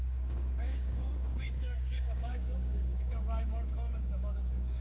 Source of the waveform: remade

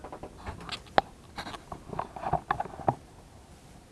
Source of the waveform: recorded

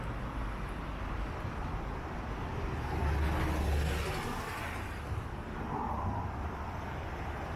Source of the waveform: recorded